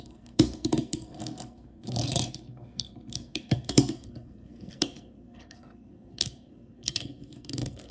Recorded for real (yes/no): no